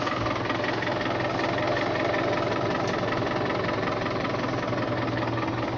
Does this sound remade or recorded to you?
recorded